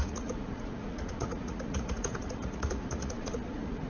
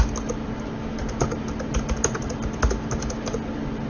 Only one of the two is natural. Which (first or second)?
second